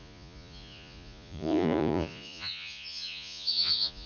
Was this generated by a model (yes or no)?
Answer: yes